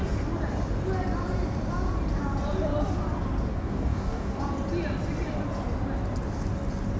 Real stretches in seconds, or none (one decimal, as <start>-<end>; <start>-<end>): 0.0-3.5; 4.4-7.0

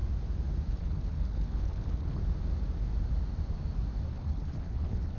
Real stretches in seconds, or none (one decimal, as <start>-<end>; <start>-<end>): 0.0-0.7; 2.2-4.1

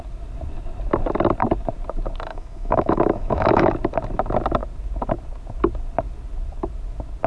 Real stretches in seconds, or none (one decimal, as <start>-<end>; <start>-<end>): 0.0-2.3; 3.7-7.3